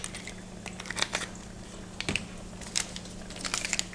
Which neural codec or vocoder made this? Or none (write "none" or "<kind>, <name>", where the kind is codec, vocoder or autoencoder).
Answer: none